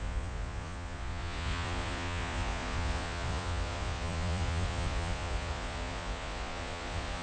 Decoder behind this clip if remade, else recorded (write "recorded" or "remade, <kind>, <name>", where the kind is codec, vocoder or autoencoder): remade, vocoder, Vocos